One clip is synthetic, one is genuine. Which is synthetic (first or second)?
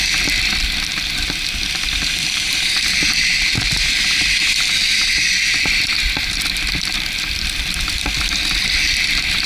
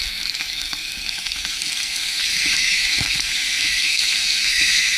second